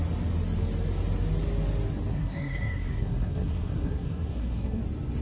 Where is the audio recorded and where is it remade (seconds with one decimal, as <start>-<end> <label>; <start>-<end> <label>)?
0.0-2.1 recorded; 2.1-4.8 remade; 4.8-5.2 recorded

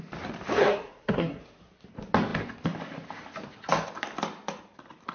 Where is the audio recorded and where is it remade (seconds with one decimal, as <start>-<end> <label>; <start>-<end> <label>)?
0.0-0.6 recorded; 0.6-1.4 remade; 1.4-5.1 recorded